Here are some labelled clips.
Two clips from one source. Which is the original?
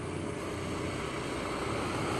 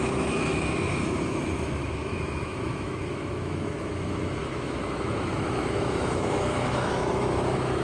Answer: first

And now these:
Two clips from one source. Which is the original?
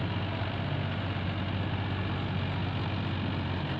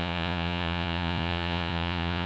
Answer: first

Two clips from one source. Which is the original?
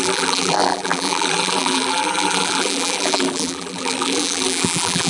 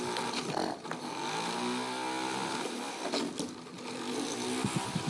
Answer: second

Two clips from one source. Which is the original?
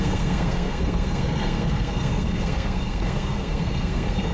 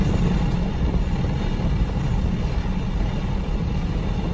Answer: second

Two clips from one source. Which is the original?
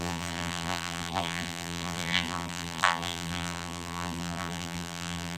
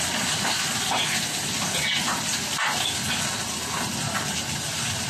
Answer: second